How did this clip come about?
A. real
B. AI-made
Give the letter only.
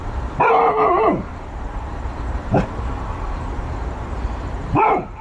B